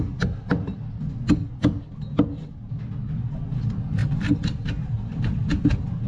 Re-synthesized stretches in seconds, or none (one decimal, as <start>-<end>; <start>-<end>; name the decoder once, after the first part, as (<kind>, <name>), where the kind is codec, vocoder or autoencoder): none